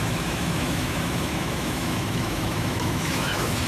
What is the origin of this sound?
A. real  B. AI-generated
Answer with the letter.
B